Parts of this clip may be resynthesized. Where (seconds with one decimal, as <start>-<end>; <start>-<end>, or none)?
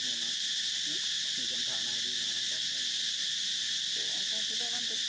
none